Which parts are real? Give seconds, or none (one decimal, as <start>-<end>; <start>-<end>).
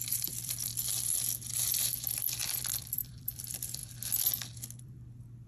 0.7-2.6; 3.8-4.8